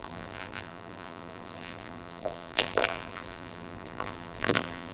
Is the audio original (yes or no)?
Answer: no